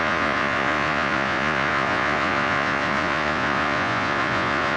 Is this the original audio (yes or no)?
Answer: no